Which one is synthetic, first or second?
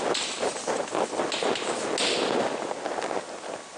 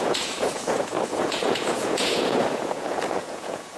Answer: second